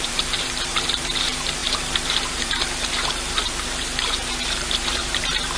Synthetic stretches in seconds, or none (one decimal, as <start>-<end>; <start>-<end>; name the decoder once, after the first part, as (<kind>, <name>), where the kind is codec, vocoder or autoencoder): 0.0-5.6 (vocoder, BigVGAN v2)